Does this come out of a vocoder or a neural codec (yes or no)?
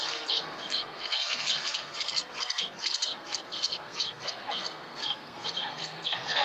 yes